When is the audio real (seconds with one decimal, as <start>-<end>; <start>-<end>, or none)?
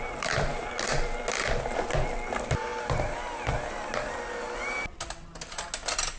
0.0-6.2